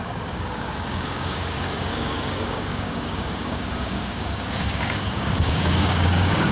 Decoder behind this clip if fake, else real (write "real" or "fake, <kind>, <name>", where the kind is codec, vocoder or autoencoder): fake, codec, DAC